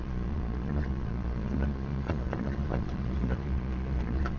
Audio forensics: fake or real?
fake